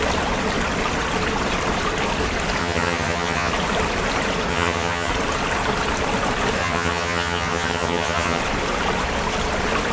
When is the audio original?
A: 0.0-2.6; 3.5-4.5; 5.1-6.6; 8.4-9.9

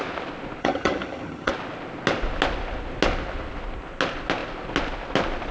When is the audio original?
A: 0.0-0.6; 1.5-5.5